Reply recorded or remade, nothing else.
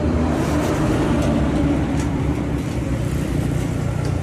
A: remade